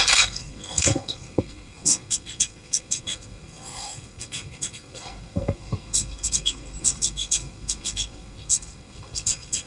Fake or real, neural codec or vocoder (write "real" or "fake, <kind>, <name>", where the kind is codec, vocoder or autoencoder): fake, codec, SNAC